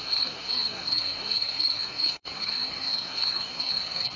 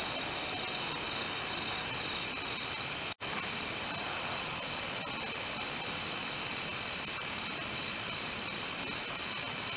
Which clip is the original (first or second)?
second